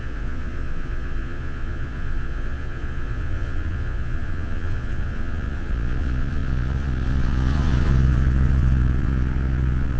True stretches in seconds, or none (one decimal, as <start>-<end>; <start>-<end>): none